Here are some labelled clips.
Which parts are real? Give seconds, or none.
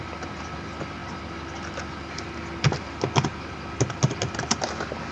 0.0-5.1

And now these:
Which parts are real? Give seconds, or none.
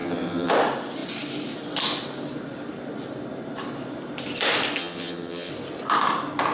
0.5-4.8; 5.5-6.5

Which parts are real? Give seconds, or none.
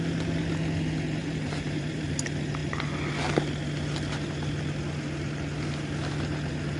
0.0-1.2; 2.1-6.8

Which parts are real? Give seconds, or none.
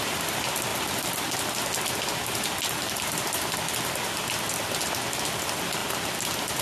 0.0-0.7; 1.4-5.8